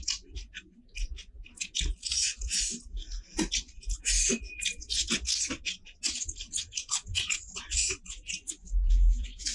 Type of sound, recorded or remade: recorded